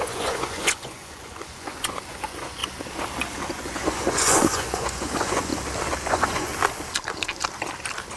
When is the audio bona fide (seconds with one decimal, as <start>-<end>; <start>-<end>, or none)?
2.6-3.5; 5.5-6.1; 6.5-8.2